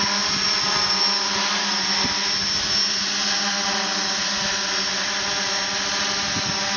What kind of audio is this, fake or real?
real